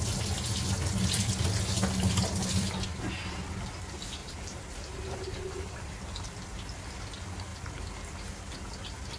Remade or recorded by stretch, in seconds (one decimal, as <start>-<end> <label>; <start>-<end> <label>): 0.0-4.2 recorded; 4.2-6.0 remade; 6.0-9.2 recorded